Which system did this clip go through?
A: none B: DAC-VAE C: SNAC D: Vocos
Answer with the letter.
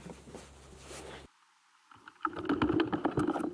A